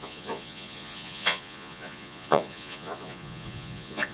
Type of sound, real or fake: fake